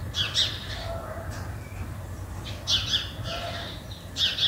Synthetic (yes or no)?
yes